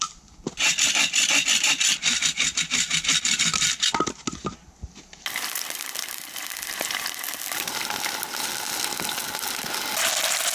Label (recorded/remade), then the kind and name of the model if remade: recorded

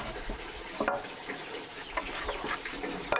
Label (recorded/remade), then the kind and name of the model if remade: recorded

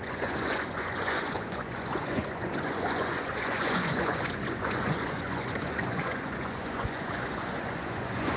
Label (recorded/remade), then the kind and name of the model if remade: remade, vocoder, Vocos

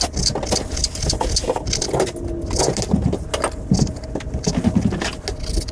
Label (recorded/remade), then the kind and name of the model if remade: recorded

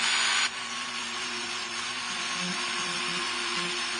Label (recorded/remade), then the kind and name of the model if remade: remade, vocoder, Vocos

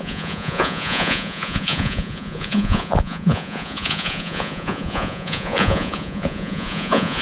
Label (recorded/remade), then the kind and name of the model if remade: remade, vocoder, Vocos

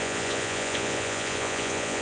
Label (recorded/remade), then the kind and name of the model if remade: remade, vocoder, Vocos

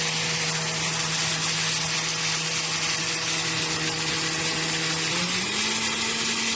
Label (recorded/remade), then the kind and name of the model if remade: recorded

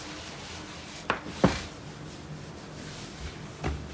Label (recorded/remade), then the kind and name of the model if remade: recorded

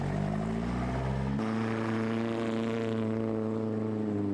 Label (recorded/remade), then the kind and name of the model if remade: recorded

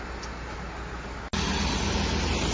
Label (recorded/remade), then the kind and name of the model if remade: recorded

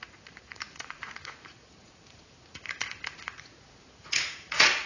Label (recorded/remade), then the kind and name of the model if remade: remade, vocoder, Vocos